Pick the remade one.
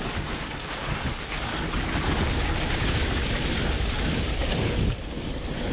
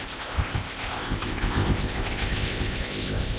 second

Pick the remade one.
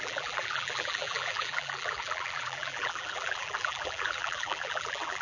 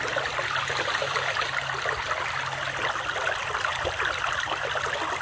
first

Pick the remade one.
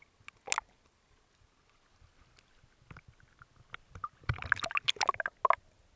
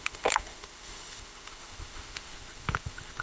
second